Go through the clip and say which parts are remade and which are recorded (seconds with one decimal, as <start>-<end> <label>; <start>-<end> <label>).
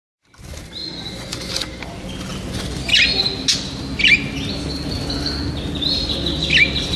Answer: 0.0-0.8 recorded; 0.8-1.5 remade; 1.5-7.0 recorded